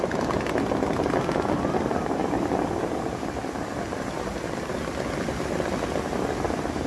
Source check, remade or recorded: recorded